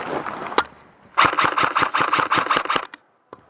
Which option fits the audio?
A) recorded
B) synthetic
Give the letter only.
A